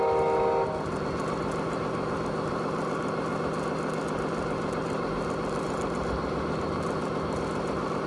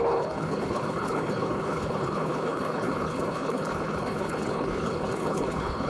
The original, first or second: first